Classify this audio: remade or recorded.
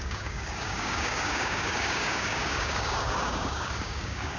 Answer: remade